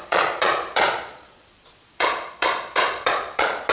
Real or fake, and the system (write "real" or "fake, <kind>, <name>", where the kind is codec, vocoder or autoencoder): fake, vocoder, Vocos